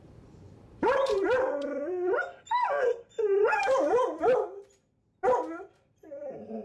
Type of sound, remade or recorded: remade